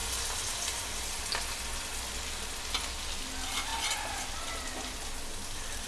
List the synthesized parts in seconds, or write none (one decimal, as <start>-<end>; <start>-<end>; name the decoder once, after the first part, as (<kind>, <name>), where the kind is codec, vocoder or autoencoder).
none